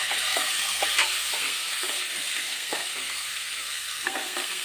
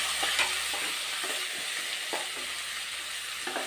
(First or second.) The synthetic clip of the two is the first